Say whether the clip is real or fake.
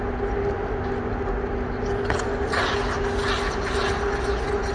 real